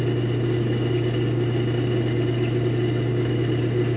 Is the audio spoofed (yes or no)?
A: no